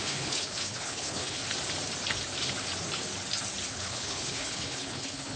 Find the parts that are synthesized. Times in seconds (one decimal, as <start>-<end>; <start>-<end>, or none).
0.0-1.4; 3.7-5.4